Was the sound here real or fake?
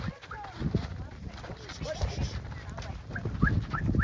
real